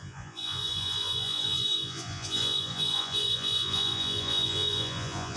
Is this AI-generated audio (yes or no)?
yes